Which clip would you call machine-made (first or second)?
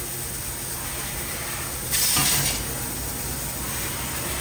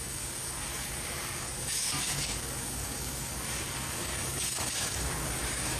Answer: second